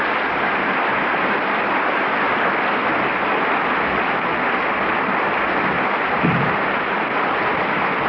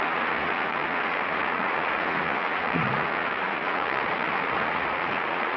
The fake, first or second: second